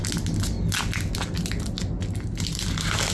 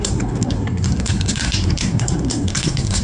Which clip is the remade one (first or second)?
second